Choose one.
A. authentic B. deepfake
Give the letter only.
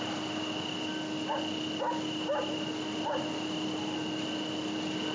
A